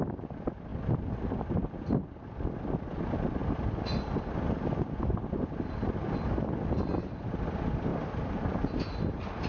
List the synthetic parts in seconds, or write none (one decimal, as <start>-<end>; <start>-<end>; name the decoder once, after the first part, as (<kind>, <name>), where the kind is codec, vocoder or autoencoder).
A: 0.7-1.9 (vocoder, BigVGAN v2); 7.9-8.5